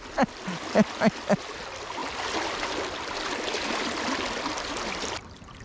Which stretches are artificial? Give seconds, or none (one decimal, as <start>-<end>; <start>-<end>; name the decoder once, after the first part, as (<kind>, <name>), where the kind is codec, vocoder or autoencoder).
none